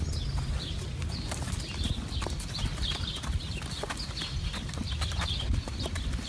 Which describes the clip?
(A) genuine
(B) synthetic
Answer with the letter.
A